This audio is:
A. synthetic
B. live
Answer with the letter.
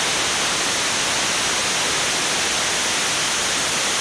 B